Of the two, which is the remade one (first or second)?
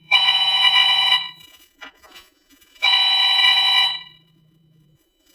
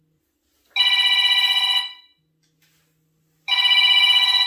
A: first